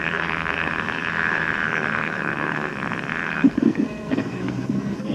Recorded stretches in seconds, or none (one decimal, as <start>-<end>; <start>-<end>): none